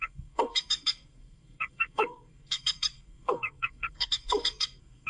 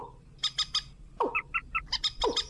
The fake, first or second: first